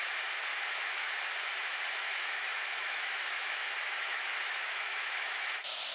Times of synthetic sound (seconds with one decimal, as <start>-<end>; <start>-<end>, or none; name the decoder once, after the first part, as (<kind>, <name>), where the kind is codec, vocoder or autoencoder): 0.5-1.1 (autoencoder, DAC-VAE); 2.0-5.5